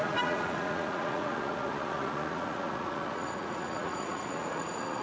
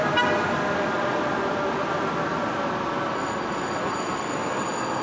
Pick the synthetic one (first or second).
first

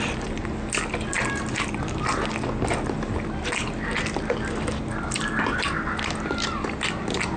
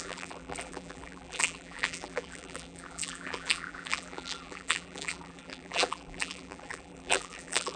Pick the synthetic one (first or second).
second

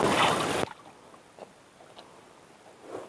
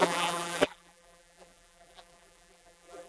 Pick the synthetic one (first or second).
second